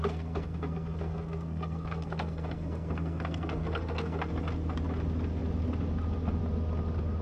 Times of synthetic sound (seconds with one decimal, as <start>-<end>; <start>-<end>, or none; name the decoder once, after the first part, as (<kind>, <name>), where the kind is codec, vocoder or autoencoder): 0.0-4.3 (codec, SNAC)